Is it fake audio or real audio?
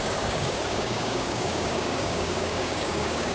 fake